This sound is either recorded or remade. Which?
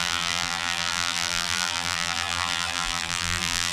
remade